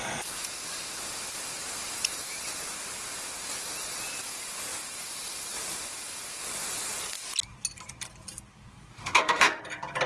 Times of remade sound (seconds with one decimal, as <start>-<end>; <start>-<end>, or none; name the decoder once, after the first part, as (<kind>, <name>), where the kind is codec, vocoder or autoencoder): 8.9-9.6 (autoencoder, DAC-VAE)